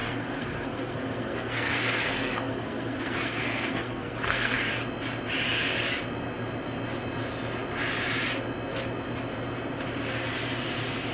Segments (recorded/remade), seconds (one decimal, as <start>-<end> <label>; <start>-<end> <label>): 0.0-4.7 remade; 4.7-11.1 recorded